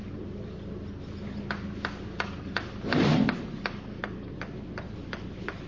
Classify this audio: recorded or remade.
recorded